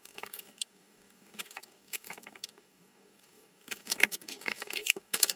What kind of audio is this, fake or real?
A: fake